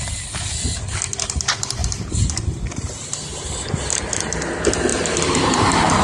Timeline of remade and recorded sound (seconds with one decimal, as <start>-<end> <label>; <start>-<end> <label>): 0.0-1.8 recorded; 1.8-4.3 remade; 4.3-4.9 recorded; 4.9-6.0 remade